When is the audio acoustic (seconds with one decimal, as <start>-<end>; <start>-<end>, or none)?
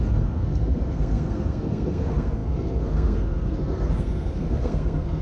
none